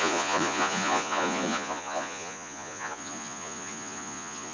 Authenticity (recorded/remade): remade